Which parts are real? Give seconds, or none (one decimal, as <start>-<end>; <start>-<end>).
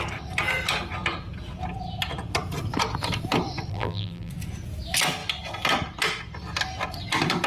0.0-3.7; 4.3-7.5